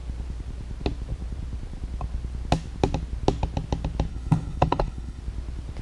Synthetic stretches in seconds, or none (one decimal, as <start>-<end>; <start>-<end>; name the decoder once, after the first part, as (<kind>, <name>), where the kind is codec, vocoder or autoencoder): 4.1-5.2 (codec, HILCodec)